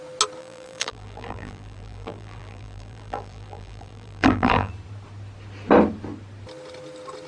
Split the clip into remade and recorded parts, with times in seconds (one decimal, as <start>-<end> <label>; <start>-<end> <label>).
0.0-0.4 recorded; 0.4-4.7 remade; 4.7-7.3 recorded